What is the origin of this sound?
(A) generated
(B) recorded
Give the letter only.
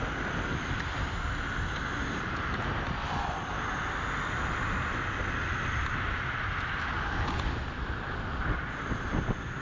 B